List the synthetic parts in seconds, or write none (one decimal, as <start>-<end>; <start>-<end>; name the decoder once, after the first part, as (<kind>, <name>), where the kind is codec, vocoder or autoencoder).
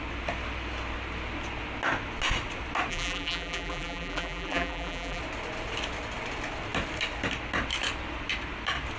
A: 2.9-5.2 (vocoder, BigVGAN v2)